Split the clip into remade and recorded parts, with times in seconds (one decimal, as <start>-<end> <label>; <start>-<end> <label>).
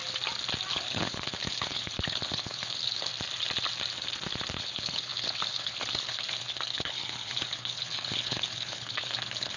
0.0-0.7 recorded; 0.7-3.1 remade; 3.1-4.6 recorded; 4.6-9.6 remade